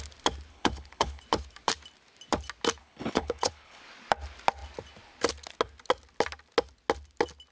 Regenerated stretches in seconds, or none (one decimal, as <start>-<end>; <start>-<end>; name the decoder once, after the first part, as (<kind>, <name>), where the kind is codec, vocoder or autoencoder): 0.5-1.2 (codec, HILCodec); 2.8-3.8